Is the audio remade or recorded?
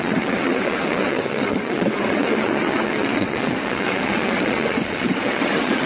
remade